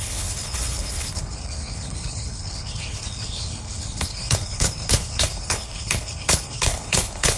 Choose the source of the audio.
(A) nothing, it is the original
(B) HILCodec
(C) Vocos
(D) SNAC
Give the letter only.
B